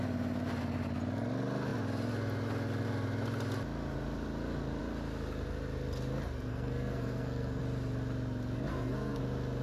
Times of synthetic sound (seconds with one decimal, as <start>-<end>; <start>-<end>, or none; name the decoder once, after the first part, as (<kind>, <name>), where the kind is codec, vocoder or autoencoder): 6.5-7.6 (codec, SNAC); 8.7-9.2